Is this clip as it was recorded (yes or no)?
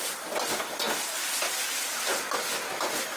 yes